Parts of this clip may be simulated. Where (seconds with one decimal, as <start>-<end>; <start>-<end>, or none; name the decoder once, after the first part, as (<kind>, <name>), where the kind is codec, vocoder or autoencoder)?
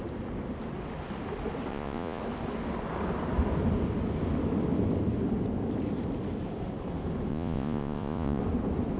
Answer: 1.7-2.2 (vocoder, Vocos); 7.3-8.4